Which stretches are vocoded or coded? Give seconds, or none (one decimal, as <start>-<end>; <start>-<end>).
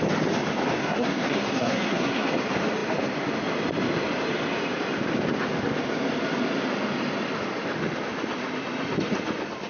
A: 0.8-2.3